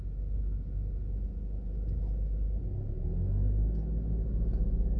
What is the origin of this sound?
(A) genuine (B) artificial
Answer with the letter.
A